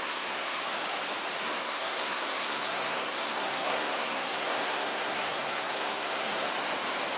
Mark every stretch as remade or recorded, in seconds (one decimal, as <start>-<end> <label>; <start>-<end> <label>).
0.0-0.6 remade; 0.6-1.4 recorded; 1.4-6.5 remade; 6.5-7.2 recorded